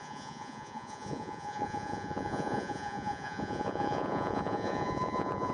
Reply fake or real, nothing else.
fake